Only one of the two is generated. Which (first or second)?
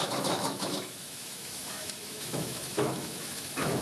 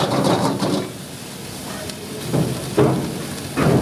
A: first